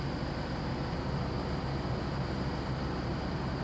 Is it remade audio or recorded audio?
recorded